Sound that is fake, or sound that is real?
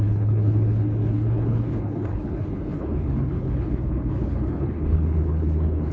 fake